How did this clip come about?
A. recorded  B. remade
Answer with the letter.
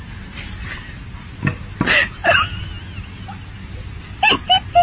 A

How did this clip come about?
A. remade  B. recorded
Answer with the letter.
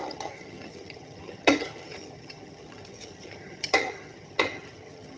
A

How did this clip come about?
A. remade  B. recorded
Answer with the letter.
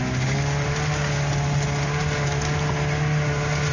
B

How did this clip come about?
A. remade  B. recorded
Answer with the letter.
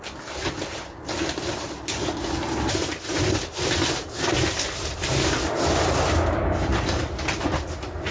B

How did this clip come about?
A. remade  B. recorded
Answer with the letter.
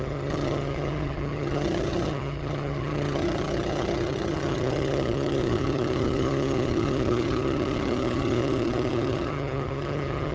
A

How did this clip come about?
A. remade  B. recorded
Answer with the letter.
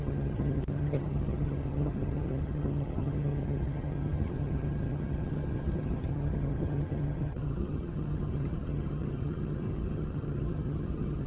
A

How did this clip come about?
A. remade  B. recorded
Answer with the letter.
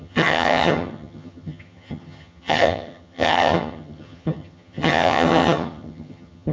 A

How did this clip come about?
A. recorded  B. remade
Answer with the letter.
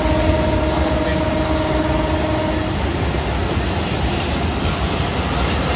A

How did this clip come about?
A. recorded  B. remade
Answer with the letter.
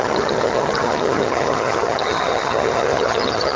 B